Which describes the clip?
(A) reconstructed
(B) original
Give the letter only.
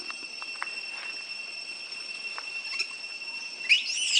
B